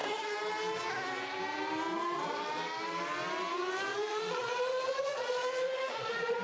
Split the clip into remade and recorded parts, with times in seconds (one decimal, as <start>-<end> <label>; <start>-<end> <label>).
0.0-3.9 recorded; 3.9-6.4 remade